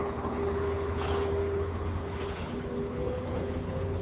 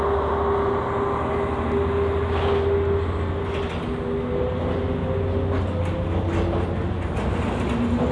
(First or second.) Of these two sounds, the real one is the second